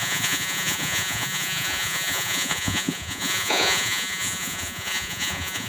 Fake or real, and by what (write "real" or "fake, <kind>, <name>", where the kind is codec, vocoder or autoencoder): fake, vocoder, Vocos